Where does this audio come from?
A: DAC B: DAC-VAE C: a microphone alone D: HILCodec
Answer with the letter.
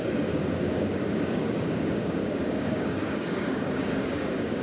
A